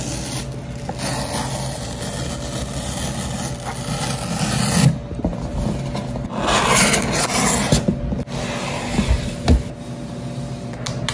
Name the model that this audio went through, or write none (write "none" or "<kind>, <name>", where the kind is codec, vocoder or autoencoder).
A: none